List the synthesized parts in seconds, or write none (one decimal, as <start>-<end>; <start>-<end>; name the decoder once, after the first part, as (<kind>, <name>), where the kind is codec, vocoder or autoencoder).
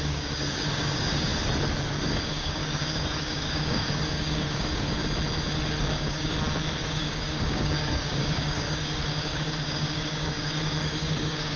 0.0-1.3 (codec, DAC); 2.0-5.0; 5.8-6.3; 6.8-11.6